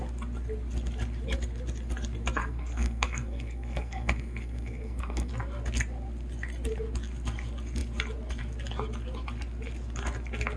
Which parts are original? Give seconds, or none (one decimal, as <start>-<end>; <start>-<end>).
0.0-2.4; 5.3-10.6